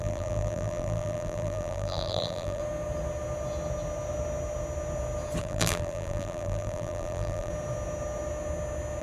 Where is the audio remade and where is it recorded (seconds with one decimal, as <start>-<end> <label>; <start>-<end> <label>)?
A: 0.0-2.6 remade; 2.6-5.4 recorded; 5.4-7.5 remade; 7.5-9.0 recorded